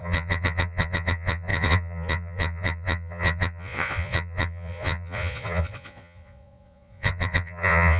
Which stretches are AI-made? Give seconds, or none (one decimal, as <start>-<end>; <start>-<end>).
0.0-8.0